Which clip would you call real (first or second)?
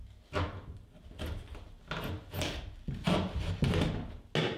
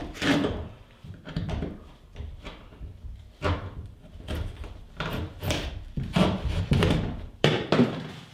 first